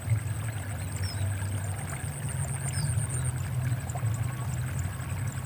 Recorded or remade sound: recorded